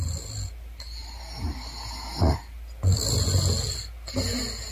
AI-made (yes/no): no